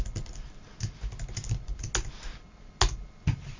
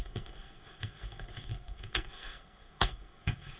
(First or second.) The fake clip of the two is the second